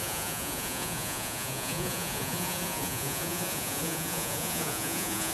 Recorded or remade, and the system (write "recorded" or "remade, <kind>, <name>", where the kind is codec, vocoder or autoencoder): remade, vocoder, Vocos